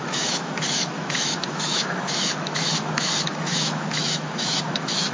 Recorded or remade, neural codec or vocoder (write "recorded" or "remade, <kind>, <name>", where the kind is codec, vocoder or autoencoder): remade, autoencoder, DAC-VAE